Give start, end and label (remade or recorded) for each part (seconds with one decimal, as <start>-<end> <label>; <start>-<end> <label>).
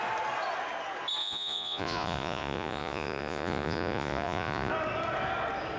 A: 0.0-1.2 recorded; 1.2-4.7 remade; 4.7-5.8 recorded